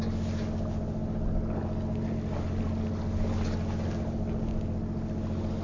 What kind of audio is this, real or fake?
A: real